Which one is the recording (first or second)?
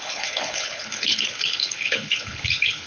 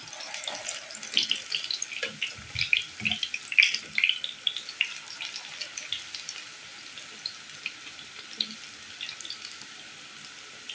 second